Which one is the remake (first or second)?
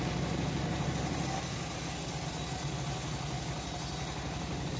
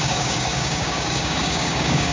second